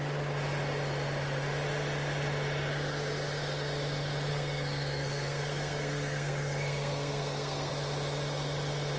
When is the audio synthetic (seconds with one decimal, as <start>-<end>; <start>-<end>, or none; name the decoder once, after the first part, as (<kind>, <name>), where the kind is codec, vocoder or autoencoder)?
4.3-7.7 (codec, SNAC)